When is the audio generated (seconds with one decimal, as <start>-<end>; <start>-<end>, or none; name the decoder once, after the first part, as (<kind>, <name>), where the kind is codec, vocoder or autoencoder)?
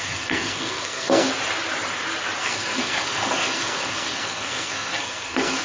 0.0-1.3 (codec, SNAC); 2.4-5.6